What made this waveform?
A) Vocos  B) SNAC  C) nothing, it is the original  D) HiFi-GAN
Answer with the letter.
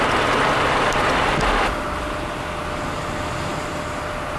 C